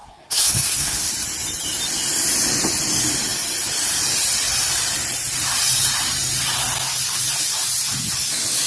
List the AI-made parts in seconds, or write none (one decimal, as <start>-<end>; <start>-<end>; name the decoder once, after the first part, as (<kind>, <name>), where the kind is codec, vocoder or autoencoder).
0.0-1.1 (codec, SNAC)